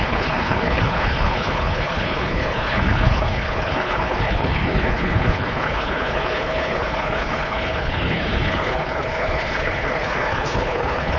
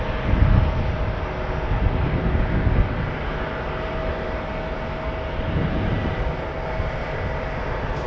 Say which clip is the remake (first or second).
first